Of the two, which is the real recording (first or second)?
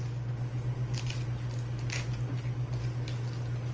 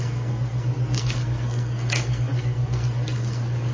first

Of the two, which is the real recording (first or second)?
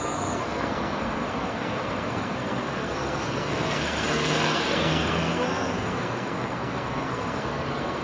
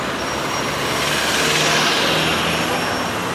second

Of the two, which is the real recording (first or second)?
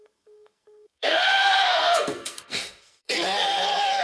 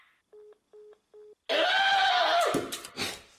second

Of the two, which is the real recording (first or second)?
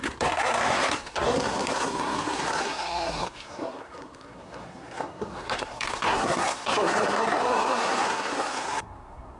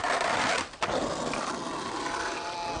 second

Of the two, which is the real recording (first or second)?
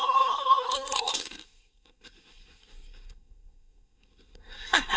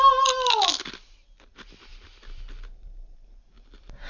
second